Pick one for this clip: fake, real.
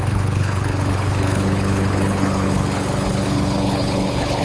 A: fake